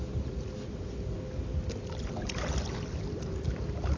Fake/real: real